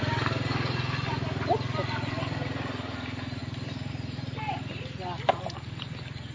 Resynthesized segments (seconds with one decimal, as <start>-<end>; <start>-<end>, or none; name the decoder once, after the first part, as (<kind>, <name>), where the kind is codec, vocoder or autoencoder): none